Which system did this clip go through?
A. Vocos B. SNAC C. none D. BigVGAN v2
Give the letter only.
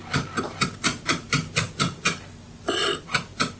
D